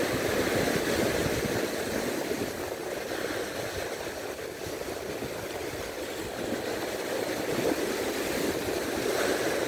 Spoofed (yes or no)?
no